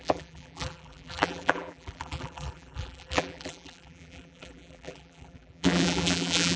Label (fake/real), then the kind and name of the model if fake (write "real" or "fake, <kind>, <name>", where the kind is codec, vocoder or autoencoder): fake, vocoder, BigVGAN v2